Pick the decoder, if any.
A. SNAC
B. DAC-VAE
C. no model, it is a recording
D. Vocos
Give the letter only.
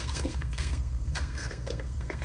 A